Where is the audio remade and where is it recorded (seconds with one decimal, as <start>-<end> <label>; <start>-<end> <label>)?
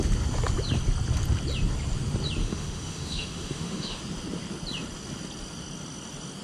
0.0-2.4 recorded; 2.4-4.0 remade; 4.0-6.4 recorded